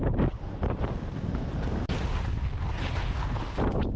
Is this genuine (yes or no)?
yes